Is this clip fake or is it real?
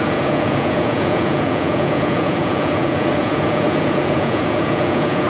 fake